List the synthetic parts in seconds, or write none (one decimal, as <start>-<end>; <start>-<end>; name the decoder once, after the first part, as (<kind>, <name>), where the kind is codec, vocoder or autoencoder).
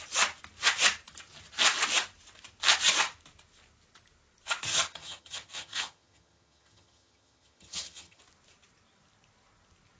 4.7-8.2 (vocoder, HiFi-GAN)